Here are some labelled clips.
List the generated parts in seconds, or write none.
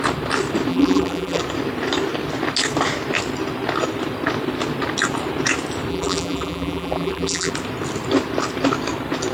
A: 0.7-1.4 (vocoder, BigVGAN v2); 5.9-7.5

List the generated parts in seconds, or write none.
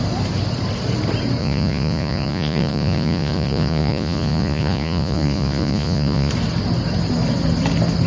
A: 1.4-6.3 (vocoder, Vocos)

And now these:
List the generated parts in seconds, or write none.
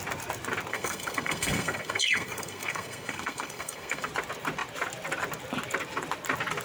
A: 0.7-4.1 (codec, SNAC)